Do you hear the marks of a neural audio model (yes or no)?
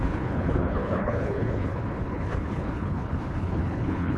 yes